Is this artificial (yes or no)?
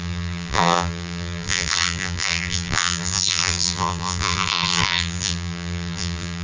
yes